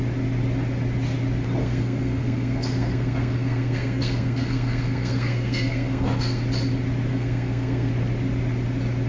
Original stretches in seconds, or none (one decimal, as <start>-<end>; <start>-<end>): 0.0-1.6; 6.4-7.1; 7.9-9.1